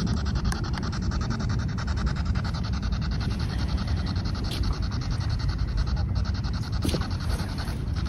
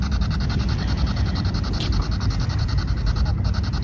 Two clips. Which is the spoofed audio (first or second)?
first